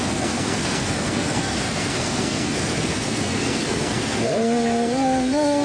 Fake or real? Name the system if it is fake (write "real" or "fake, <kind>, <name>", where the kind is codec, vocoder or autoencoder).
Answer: fake, codec, SNAC